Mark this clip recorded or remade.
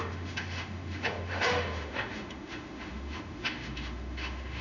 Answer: remade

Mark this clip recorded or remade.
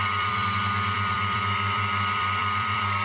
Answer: remade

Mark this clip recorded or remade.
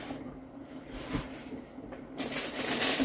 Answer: remade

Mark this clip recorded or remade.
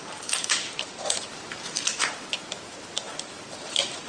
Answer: remade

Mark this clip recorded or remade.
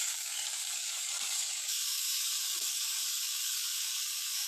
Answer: remade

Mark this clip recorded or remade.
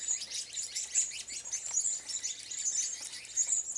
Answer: recorded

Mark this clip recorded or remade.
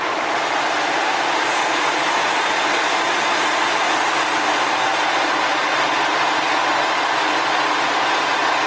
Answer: recorded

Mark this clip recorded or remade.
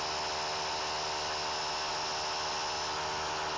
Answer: recorded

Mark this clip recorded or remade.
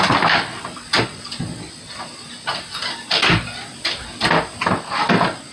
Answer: recorded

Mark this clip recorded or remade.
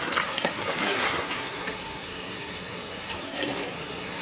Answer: remade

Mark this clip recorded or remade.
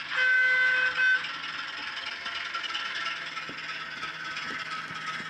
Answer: recorded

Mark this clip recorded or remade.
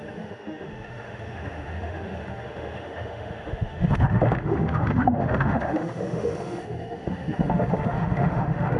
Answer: remade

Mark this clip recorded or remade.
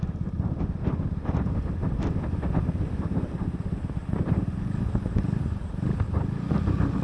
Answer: recorded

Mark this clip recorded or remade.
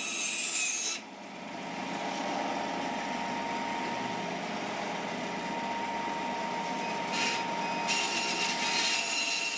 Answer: recorded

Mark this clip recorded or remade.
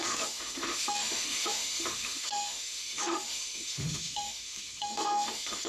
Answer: remade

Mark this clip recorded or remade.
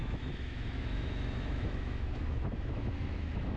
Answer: remade